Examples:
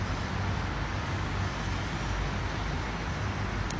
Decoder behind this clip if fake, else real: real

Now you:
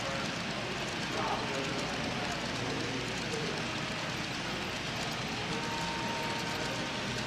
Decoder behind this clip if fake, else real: real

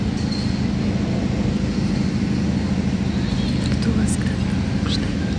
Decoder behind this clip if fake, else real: real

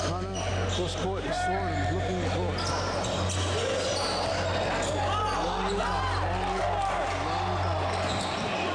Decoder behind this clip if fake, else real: real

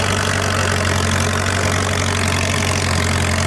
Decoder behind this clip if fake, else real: real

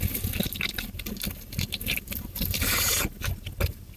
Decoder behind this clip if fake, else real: real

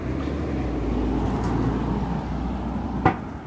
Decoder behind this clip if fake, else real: real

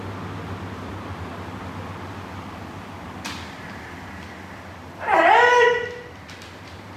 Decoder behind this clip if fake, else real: real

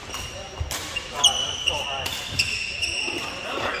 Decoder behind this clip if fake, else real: real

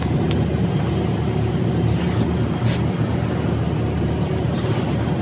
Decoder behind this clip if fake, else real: real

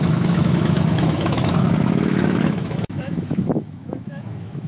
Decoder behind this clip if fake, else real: fake, autoencoder, DAC-VAE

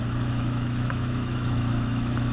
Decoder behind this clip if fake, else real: fake, autoencoder, DAC-VAE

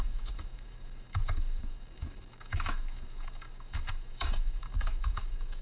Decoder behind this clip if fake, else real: fake, autoencoder, DAC-VAE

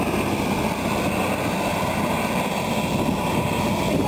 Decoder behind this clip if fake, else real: real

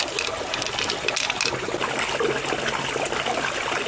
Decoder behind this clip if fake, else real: real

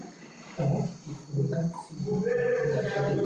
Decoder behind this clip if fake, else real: real